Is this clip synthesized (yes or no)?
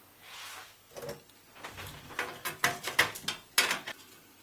no